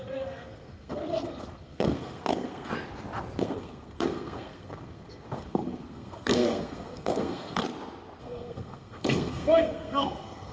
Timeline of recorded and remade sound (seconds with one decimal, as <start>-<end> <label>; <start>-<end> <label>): 0.0-2.7 remade; 2.7-3.4 recorded; 3.4-7.6 remade; 7.6-8.2 recorded; 8.2-10.5 remade